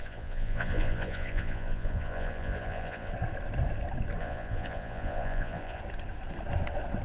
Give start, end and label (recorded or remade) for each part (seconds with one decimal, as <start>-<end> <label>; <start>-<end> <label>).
0.0-3.1 remade; 3.1-4.2 recorded; 4.2-5.8 remade; 5.8-7.0 recorded